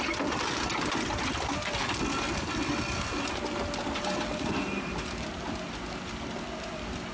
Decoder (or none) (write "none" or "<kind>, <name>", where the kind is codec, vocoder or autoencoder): vocoder, BigVGAN v2